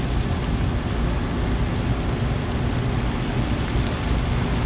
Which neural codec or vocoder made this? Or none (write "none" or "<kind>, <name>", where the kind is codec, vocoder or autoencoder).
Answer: none